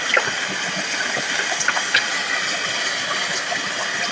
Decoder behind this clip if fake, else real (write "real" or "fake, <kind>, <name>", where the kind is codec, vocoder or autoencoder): real